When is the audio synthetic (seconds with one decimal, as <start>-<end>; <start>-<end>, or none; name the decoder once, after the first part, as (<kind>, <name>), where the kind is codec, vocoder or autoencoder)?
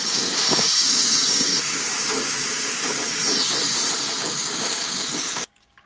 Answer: 0.0-3.2 (codec, DAC); 4.2-5.9